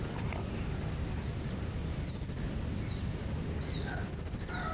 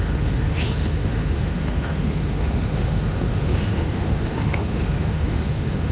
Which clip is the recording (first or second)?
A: first